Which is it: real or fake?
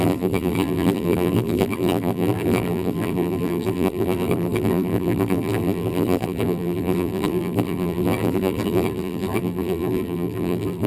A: fake